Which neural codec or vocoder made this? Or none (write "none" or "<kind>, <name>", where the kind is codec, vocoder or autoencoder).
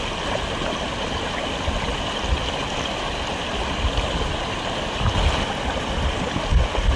none